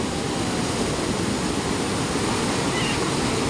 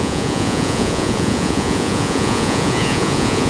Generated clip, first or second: second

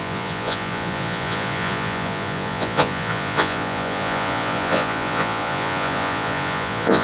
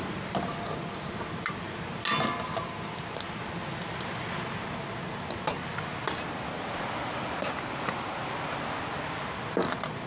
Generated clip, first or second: first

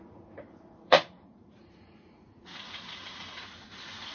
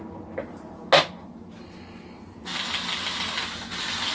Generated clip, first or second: first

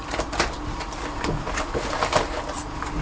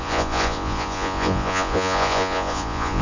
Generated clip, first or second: second